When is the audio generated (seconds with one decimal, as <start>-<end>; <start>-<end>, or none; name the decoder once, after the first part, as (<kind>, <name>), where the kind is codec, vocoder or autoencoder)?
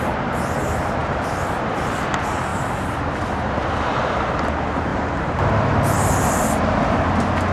1.0-2.1 (vocoder, BigVGAN v2); 4.9-5.5